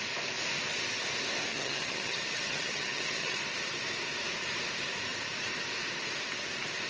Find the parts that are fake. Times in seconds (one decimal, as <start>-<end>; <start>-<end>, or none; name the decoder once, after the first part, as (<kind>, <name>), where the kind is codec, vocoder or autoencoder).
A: 1.5-3.4 (vocoder, HiFi-GAN)